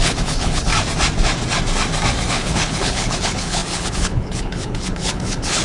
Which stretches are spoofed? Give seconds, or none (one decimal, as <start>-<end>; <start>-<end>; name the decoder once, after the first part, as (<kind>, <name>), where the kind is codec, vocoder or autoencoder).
0.0-0.7 (codec, HILCodec); 2.3-5.6